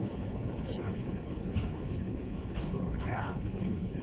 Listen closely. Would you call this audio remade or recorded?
remade